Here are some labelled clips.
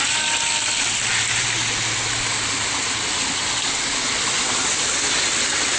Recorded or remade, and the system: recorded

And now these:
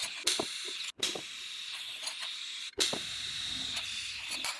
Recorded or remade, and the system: recorded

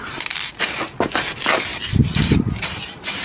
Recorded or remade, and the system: recorded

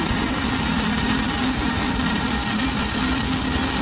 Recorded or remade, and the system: remade, vocoder, BigVGAN v2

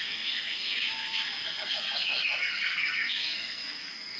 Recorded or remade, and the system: remade, codec, SNAC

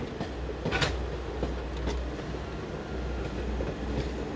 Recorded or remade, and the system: recorded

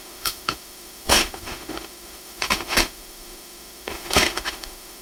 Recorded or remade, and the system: remade, autoencoder, DAC-VAE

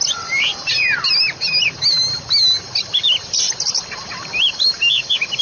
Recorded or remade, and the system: recorded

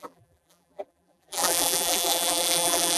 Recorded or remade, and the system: remade, vocoder, BigVGAN v2